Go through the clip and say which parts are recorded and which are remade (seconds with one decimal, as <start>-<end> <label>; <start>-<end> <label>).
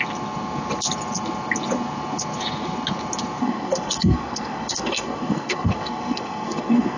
0.0-3.4 recorded; 3.4-7.0 remade